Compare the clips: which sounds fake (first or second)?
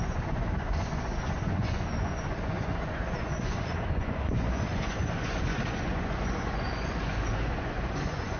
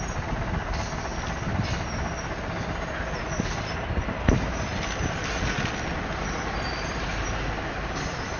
first